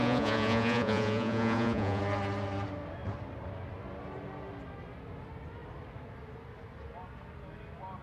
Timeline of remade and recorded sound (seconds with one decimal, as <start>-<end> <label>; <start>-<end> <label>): 0.0-2.0 remade; 2.0-8.0 recorded